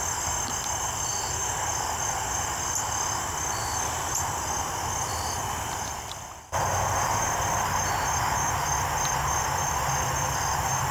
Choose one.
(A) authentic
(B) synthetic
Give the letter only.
A